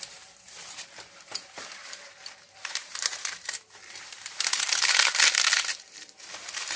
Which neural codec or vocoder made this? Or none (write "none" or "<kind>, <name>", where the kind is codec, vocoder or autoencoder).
vocoder, BigVGAN v2